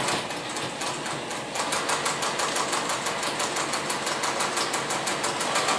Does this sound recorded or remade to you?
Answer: recorded